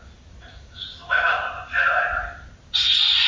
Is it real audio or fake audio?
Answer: real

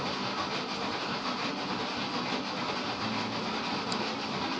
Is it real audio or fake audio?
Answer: real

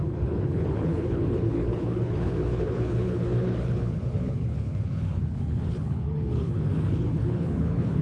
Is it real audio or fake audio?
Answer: fake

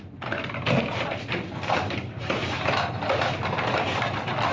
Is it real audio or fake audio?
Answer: real